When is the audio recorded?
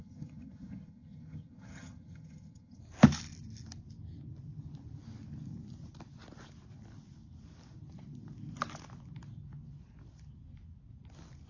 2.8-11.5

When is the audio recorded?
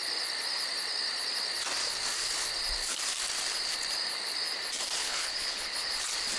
0.0-5.0; 5.9-6.4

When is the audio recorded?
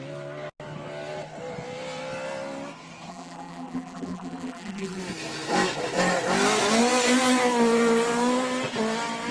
0.0-3.1; 5.0-9.3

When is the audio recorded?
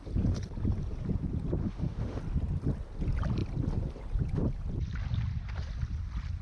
0.0-1.6; 2.2-6.4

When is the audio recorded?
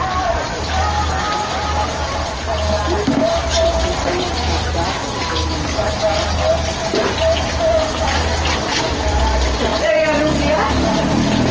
0.0-11.5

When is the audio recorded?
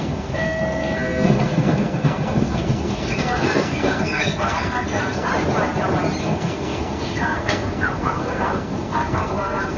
5.3-6.2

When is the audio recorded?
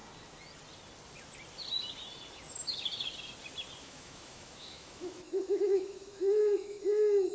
0.0-3.8